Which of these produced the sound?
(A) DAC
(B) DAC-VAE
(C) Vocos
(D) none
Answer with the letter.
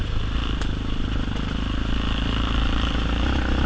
D